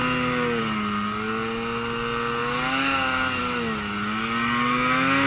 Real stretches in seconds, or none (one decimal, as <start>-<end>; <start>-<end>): 0.0-5.3